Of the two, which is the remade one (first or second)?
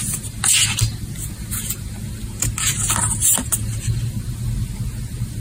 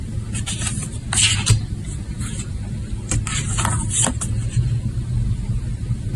second